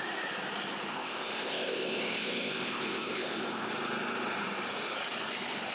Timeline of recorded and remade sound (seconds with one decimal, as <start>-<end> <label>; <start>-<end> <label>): 0.0-0.9 recorded; 0.9-3.7 remade; 3.7-5.7 recorded